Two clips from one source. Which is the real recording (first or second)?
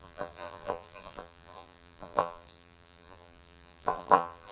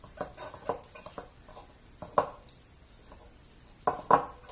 second